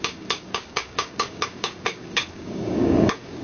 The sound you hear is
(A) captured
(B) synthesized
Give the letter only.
B